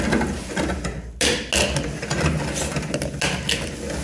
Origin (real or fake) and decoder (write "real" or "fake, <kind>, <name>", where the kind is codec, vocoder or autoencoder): real